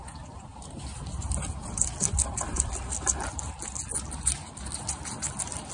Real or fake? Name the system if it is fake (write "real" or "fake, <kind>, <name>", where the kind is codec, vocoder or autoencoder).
real